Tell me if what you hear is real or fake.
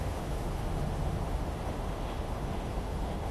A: fake